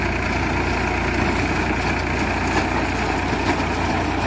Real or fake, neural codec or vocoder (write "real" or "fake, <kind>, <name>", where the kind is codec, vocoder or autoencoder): real